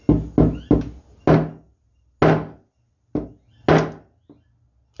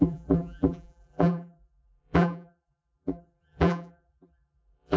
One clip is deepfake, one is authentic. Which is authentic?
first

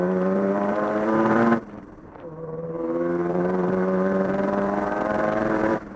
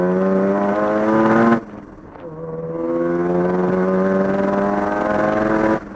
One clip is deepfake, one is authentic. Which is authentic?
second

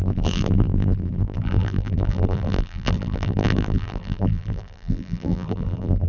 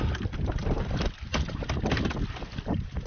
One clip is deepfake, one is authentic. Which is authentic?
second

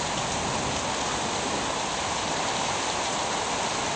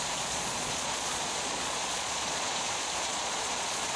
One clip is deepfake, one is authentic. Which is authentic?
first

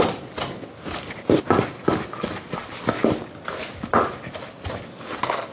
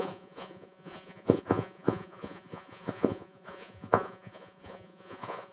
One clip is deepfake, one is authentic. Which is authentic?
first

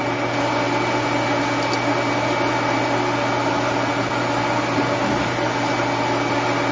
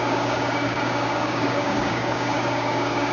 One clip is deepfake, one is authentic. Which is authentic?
first